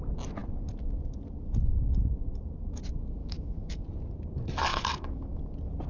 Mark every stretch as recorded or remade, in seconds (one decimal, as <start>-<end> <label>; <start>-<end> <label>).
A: 0.0-3.2 recorded; 3.2-3.8 remade; 3.8-4.7 recorded; 4.7-5.4 remade; 5.4-5.9 recorded